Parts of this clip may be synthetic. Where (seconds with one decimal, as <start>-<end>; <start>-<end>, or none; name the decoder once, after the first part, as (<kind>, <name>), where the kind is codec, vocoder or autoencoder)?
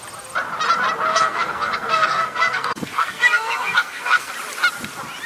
1.1-4.3 (codec, SNAC)